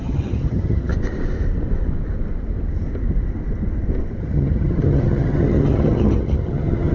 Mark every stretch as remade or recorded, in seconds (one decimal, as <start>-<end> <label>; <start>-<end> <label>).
0.0-0.9 remade; 0.9-4.2 recorded; 4.2-6.9 remade